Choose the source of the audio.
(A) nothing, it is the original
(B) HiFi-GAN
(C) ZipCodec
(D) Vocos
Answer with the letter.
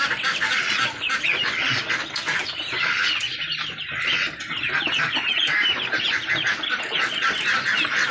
A